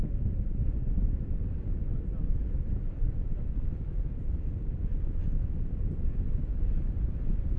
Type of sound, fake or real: real